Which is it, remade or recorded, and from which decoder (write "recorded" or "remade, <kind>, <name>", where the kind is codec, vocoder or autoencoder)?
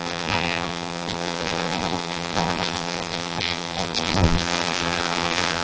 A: remade, vocoder, BigVGAN v2